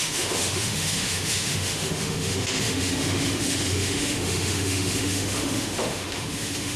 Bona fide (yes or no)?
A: no